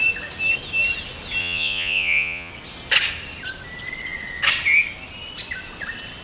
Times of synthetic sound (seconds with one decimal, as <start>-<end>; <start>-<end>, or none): 1.4-2.5